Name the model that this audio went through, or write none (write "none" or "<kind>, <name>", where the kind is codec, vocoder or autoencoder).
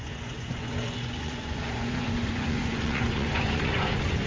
vocoder, Vocos